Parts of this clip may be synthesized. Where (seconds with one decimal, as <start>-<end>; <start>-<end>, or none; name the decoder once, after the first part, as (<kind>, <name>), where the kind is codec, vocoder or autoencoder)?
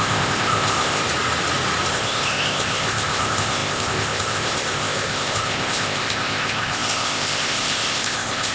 0.0-1.0 (codec, ZipCodec); 1.9-8.5